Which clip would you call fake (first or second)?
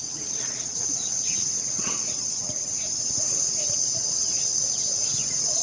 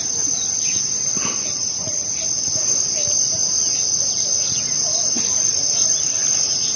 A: first